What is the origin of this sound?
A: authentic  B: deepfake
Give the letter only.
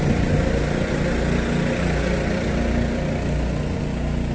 A